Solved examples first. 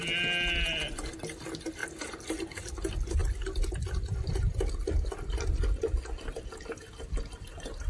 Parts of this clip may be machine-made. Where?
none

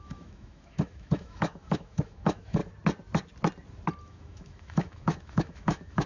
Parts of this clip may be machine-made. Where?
0.0-2.6 (autoencoder, DAC-VAE); 4.0-6.1

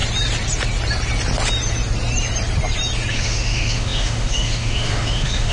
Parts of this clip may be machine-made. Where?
3.1-5.5 (autoencoder, DAC-VAE)